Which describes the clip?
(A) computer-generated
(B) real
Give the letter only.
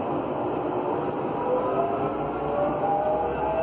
B